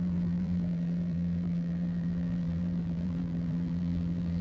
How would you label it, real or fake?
fake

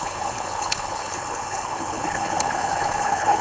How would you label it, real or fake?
fake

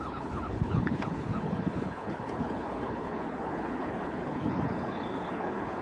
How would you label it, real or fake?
fake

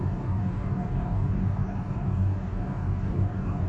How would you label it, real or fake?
fake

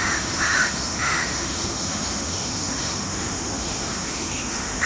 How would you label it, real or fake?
fake